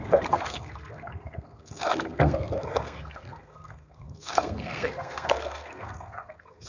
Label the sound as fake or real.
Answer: fake